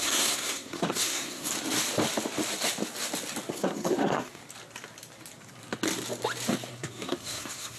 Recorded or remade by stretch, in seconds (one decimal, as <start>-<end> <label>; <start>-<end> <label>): 0.0-1.5 remade; 1.5-3.5 recorded; 3.5-4.4 remade; 4.4-6.7 recorded; 6.7-7.8 remade